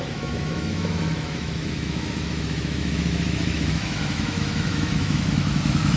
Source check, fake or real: fake